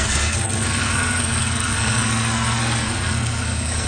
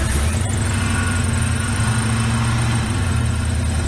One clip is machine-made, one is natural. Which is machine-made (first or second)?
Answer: first